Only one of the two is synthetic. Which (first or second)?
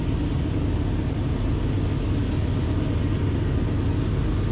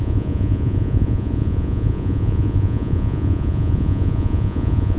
second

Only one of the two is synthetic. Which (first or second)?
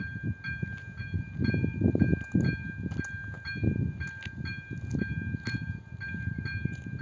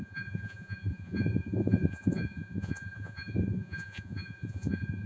second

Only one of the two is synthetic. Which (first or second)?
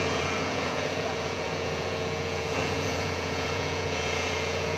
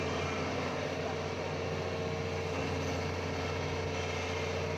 first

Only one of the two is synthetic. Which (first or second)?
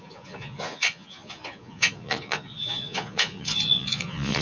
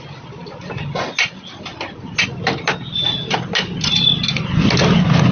first